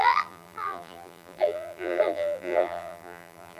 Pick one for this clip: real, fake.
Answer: fake